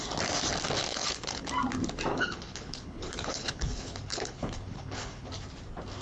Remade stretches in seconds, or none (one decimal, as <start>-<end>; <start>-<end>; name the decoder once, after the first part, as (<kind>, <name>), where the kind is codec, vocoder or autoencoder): 0.9-1.5 (codec, HILCodec); 2.1-5.3